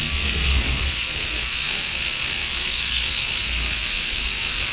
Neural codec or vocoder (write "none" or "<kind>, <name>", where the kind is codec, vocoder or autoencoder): codec, SNAC